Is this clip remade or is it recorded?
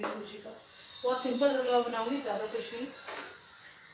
remade